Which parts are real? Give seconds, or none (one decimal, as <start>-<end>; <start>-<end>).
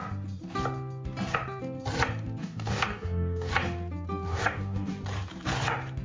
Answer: 0.0-2.4; 3.5-4.3; 4.9-6.0